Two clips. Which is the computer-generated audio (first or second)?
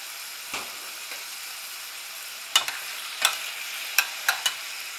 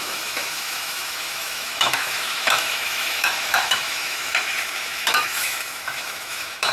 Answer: second